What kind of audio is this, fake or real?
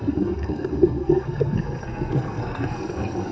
fake